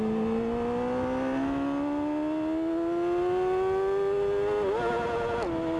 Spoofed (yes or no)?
no